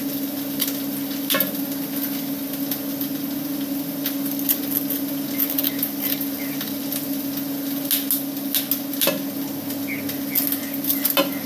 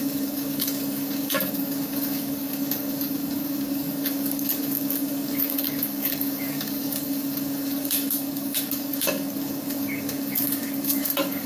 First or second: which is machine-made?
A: second